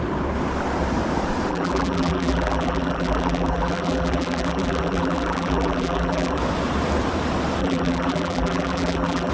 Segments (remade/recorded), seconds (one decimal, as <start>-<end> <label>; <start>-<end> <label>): 0.0-1.5 recorded; 1.5-6.4 remade; 6.4-7.6 recorded; 7.6-9.3 remade